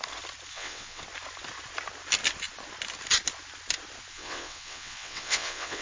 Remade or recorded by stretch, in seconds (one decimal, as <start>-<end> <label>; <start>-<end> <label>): 0.0-0.5 recorded; 0.5-1.0 remade; 1.0-4.1 recorded; 4.1-5.8 remade